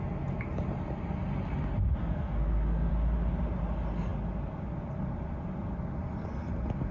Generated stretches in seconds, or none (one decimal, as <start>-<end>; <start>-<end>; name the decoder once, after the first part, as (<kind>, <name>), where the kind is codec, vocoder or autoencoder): 2.0-2.9 (codec, SNAC)